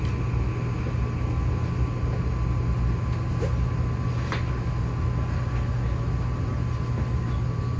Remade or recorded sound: recorded